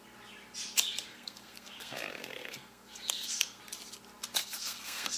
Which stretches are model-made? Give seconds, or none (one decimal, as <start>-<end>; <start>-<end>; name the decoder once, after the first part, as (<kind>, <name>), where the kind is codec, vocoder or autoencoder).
1.1-3.6 (codec, SNAC); 4.4-5.2